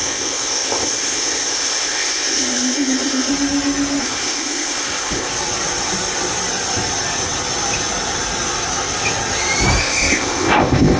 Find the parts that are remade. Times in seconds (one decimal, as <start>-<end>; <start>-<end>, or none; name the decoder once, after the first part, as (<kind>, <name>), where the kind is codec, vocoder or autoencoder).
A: 0.0-3.3 (codec, ZipCodec); 4.0-5.3; 9.8-11.0